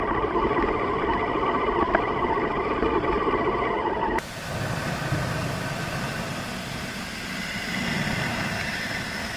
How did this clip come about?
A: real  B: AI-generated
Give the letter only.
A